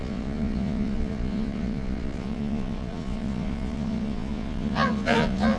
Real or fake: fake